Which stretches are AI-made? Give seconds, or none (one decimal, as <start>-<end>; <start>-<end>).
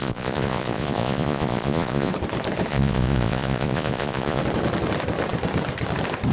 0.0-2.1; 2.7-4.4